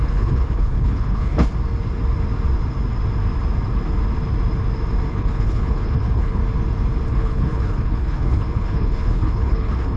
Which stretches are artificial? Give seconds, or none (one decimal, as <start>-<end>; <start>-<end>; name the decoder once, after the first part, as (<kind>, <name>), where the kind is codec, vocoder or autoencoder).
0.0-1.5 (codec, HILCodec); 5.1-6.4; 7.1-10.0

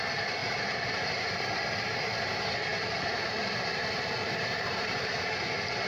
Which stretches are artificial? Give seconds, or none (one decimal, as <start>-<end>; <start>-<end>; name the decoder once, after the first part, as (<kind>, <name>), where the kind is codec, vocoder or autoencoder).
0.4-1.4 (vocoder, BigVGAN v2); 2.7-5.0

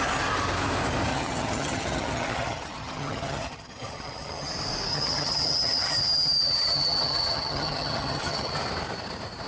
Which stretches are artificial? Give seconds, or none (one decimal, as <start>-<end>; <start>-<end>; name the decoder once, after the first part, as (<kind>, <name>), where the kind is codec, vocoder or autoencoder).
1.1-4.5 (vocoder, HiFi-GAN); 4.9-8.5

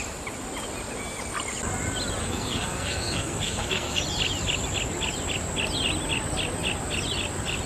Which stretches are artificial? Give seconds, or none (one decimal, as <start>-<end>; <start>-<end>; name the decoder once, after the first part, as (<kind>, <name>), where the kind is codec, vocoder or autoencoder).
2.2-4.0 (codec, SNAC)

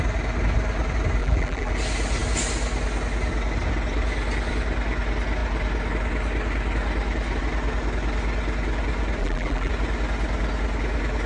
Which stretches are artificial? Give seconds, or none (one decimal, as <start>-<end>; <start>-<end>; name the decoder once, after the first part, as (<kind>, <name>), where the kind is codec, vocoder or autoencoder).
1.2-1.7 (vocoder, BigVGAN v2); 9.2-9.7

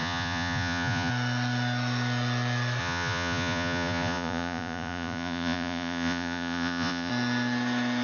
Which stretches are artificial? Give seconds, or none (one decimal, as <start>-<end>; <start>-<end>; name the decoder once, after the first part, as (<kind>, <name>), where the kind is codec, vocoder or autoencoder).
0.0-1.1 (vocoder, Vocos); 2.8-7.1

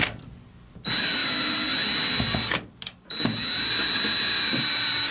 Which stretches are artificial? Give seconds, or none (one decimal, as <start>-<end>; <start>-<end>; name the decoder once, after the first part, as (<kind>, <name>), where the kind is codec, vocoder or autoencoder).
none